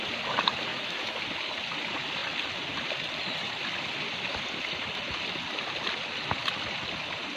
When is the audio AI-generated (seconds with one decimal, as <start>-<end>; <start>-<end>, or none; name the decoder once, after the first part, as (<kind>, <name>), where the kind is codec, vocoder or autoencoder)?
0.7-1.2 (autoencoder, DAC-VAE)